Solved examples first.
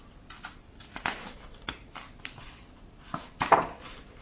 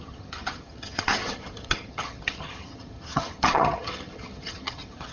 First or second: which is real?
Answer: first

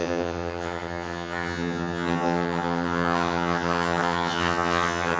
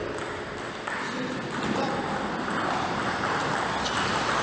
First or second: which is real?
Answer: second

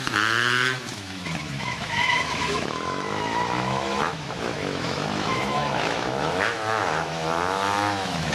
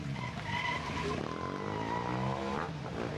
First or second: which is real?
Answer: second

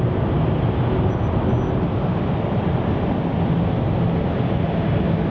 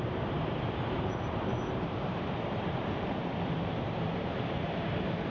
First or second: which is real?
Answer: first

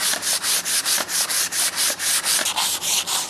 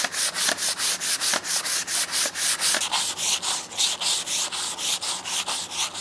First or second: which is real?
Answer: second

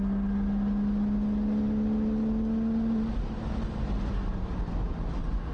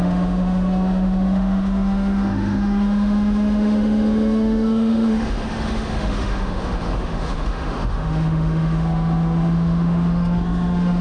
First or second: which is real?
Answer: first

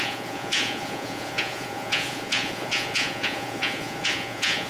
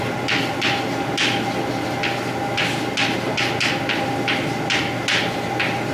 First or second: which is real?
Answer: second